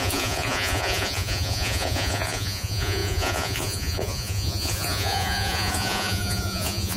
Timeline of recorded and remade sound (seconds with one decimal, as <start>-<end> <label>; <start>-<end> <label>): 0.0-7.0 remade